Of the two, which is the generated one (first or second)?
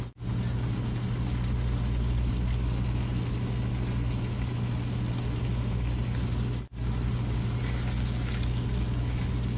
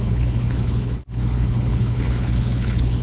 second